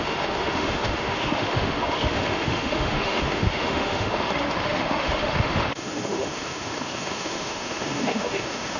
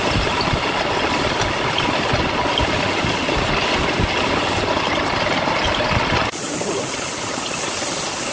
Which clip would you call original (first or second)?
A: second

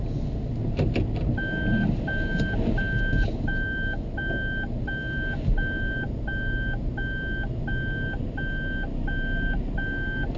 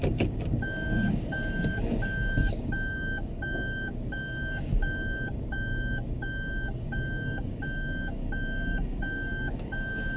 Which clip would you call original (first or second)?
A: first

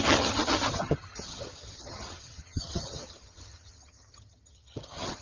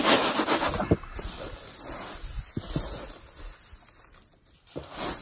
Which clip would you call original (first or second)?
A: second